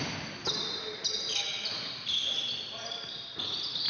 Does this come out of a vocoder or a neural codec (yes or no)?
yes